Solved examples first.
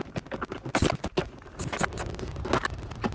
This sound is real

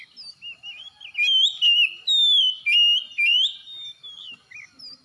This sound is real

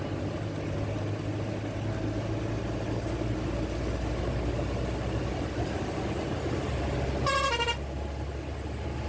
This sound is real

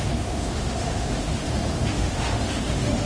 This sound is fake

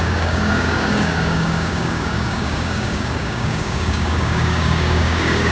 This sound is fake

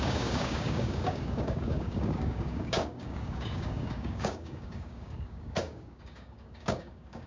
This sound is fake